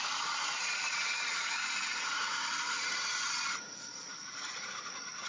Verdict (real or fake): fake